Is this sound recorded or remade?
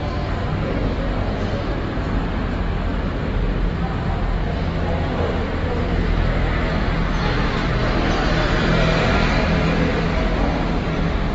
recorded